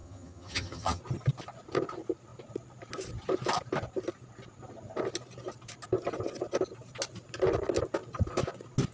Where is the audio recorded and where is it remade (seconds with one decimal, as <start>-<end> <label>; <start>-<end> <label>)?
0.0-1.0 remade; 1.0-8.9 recorded